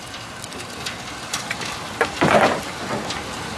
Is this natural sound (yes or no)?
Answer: yes